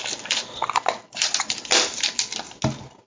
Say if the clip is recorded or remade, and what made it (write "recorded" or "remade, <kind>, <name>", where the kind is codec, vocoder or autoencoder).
recorded